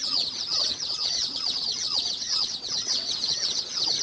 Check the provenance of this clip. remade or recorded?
remade